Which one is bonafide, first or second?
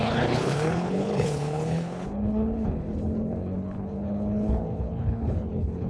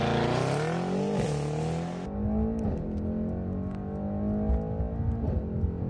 second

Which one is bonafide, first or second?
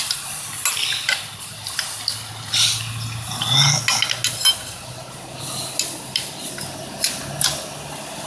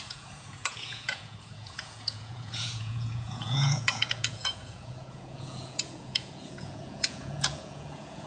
first